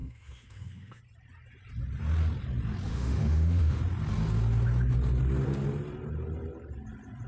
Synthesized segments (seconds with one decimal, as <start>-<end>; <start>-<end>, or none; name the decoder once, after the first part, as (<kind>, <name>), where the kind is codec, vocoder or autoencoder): 0.0-1.0 (autoencoder, DAC-VAE); 2.9-3.8